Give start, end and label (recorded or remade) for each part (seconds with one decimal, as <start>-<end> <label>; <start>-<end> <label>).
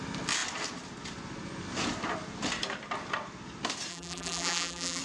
0.0-3.9 recorded; 3.9-5.0 remade